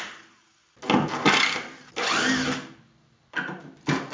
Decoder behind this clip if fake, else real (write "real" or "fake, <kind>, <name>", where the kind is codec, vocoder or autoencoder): real